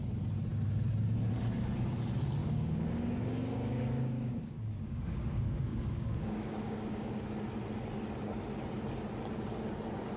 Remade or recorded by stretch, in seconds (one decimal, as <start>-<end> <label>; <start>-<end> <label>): 0.0-2.4 recorded; 2.4-7.1 remade; 7.1-10.2 recorded